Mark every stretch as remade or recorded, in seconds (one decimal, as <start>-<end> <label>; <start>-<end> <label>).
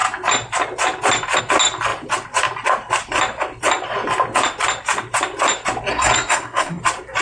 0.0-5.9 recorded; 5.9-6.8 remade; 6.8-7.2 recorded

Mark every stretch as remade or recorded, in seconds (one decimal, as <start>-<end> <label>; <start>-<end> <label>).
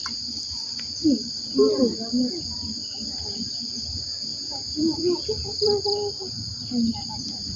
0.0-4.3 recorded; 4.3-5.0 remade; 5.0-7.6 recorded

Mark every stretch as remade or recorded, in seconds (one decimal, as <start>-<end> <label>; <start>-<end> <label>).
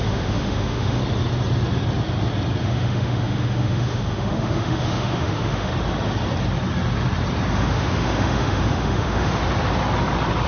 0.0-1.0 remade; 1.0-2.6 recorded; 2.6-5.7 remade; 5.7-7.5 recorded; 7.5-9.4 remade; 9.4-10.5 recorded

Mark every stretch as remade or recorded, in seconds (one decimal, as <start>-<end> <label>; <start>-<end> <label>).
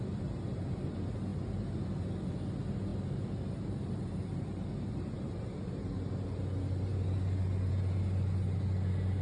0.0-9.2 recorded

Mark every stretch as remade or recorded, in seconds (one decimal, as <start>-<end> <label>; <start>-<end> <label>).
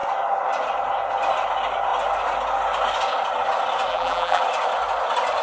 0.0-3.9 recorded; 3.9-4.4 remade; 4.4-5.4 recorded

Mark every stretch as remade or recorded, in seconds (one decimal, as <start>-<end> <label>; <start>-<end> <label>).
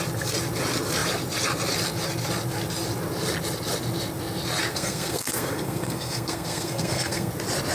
0.0-4.7 recorded; 4.7-7.3 remade; 7.3-7.7 recorded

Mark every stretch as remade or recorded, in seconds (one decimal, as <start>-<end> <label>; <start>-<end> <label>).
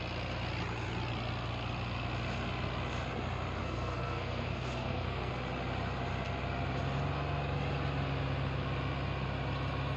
0.0-3.6 recorded; 3.6-5.3 remade; 5.3-10.0 recorded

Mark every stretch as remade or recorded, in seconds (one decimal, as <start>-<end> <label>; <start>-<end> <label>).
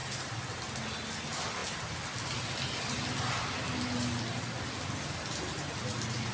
0.0-6.3 recorded